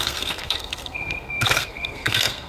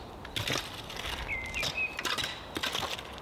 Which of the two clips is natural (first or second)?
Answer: second